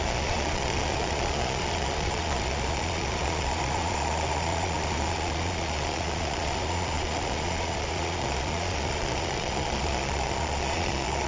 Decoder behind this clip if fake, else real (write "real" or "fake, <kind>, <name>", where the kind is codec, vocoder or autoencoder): fake, vocoder, Vocos